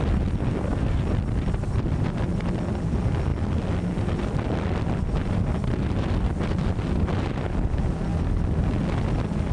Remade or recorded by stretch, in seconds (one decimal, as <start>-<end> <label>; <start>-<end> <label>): 0.0-0.5 recorded; 0.5-1.0 remade; 1.0-9.5 recorded